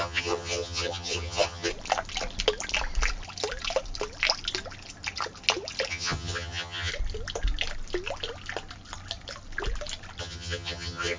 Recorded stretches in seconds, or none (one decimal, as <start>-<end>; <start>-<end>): 1.7-5.9; 6.9-10.2

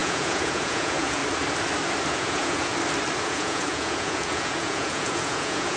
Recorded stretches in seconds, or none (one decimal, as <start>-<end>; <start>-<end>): 1.2-2.1; 2.7-3.2

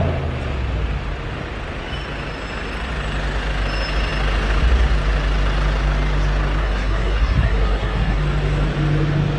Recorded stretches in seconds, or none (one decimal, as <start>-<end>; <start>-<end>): 0.0-6.6; 8.2-9.4